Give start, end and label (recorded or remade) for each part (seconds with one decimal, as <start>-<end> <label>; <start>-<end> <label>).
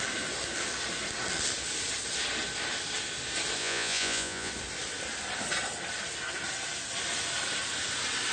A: 0.0-3.6 recorded; 3.6-4.5 remade; 4.5-8.3 recorded